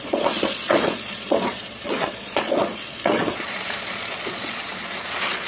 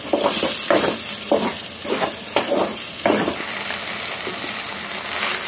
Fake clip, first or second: first